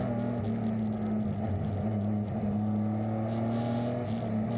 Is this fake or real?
real